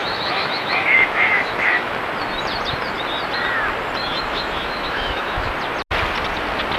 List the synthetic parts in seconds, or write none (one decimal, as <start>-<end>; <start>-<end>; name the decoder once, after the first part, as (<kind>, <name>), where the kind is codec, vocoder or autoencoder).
0.0-1.9 (autoencoder, DAC-VAE); 4.0-5.5